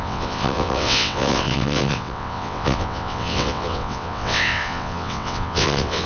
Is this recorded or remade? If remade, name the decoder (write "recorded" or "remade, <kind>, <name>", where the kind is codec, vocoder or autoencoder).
remade, vocoder, WaveNeXt